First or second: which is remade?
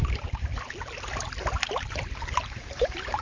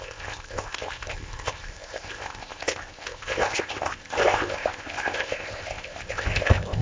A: second